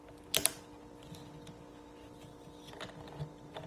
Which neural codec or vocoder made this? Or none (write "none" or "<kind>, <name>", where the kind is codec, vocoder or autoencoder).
none